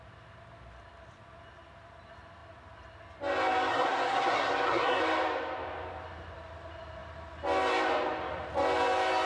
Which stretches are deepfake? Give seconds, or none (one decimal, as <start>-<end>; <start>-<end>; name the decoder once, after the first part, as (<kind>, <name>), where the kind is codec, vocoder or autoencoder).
3.7-5.0 (codec, SNAC)